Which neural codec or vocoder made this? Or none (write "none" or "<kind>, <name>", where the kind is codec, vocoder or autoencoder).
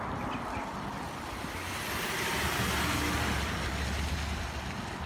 none